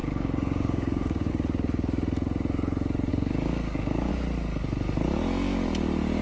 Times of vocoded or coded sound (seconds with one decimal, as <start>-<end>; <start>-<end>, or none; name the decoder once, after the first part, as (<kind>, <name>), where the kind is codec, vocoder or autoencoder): 0.0-1.3 (codec, DAC); 3.1-4.1